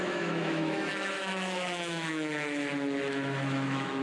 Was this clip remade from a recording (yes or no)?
yes